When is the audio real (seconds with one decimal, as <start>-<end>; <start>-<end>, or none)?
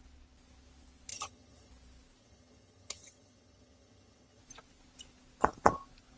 0.0-1.1; 1.7-2.2; 4.4-6.2